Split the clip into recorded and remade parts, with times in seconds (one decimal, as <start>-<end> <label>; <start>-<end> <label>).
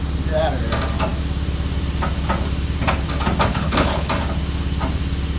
0.0-3.5 recorded; 3.5-4.1 remade; 4.1-5.4 recorded